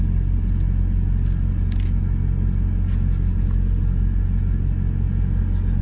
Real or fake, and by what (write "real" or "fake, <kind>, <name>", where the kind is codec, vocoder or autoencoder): real